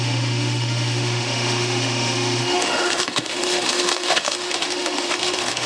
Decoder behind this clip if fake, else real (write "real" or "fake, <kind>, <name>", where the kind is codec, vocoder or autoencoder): fake, autoencoder, DAC-VAE